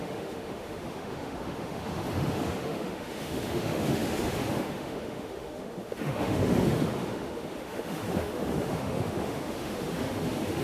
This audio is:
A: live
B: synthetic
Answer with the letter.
B